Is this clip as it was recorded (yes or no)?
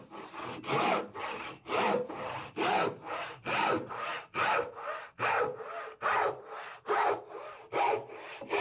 yes